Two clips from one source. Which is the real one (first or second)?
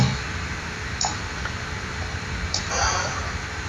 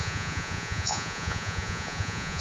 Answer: first